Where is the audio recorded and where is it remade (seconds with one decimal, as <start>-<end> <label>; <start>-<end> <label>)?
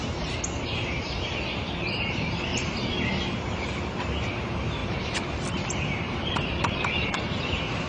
0.0-2.5 remade; 2.5-3.2 recorded; 3.2-4.8 remade; 4.8-5.8 recorded; 5.8-7.9 remade